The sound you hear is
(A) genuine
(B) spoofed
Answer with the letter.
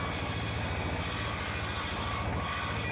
A